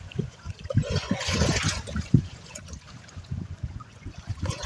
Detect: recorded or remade remade